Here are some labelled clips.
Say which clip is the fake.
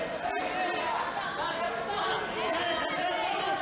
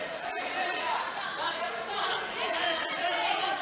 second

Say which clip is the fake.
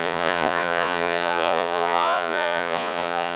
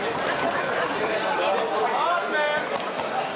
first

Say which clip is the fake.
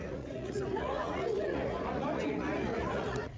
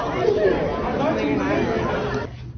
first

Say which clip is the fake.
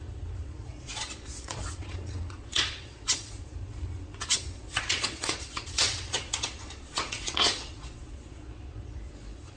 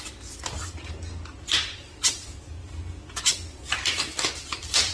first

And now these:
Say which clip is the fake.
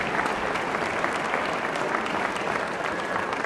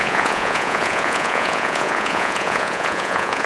second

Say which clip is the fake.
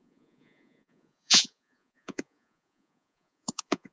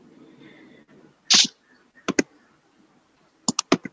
first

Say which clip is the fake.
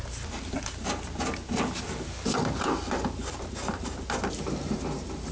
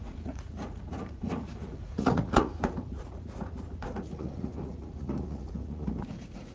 second